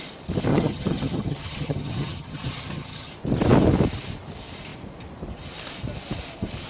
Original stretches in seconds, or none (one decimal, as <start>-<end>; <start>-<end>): 0.0-0.5; 3.1-6.7